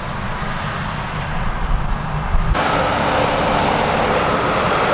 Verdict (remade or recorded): recorded